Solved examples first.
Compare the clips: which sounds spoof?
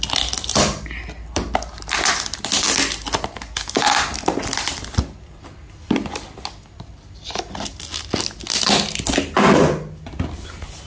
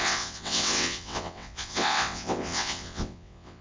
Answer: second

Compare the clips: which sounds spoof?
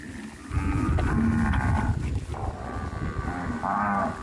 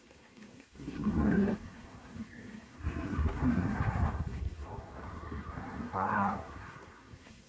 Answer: second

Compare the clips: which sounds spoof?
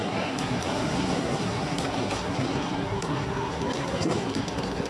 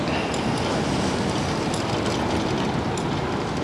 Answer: first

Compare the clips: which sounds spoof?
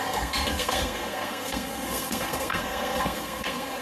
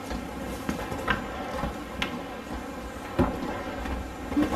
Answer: first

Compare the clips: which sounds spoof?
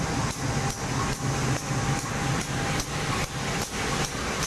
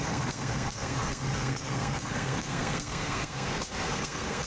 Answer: second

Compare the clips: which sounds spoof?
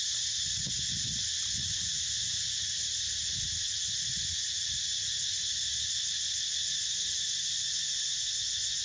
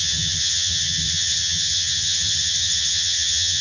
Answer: second